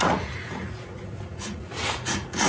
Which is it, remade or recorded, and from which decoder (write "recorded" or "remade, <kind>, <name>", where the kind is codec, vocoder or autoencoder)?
remade, vocoder, Vocos